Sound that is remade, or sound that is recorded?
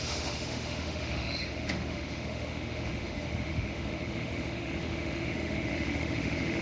remade